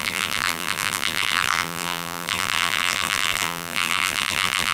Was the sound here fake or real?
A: fake